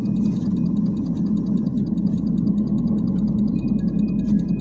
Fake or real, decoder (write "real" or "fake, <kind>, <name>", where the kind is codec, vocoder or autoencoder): real